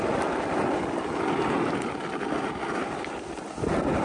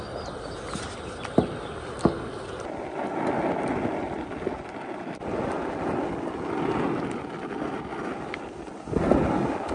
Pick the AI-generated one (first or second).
first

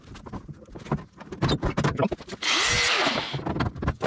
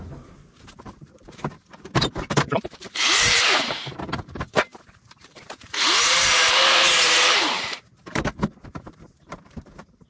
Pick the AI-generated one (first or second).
second